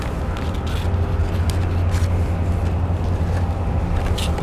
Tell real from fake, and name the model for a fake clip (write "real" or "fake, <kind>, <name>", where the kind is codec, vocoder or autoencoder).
real